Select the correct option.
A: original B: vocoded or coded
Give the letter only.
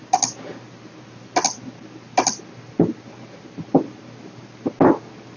A